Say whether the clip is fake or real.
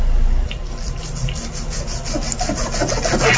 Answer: real